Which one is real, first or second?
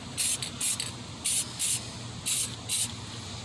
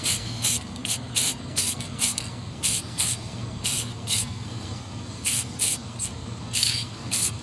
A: first